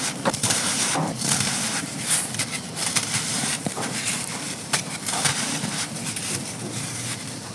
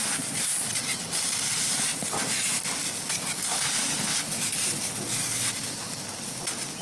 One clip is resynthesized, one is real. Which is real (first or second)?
second